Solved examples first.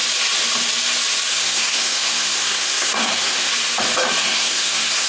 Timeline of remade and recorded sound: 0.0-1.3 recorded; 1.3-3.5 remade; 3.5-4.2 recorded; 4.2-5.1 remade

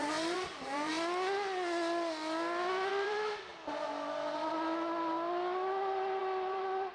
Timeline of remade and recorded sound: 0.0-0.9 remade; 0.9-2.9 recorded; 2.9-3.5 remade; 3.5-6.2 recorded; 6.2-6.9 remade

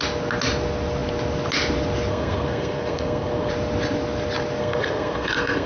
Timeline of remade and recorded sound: 0.0-2.1 recorded; 2.1-3.5 remade; 3.5-4.6 recorded; 4.6-5.7 remade

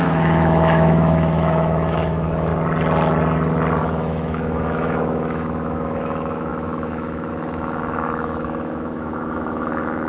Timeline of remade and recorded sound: 0.0-2.5 remade; 2.5-3.8 recorded; 3.8-10.1 remade

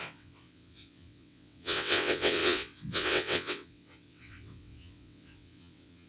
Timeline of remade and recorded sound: 0.0-6.1 remade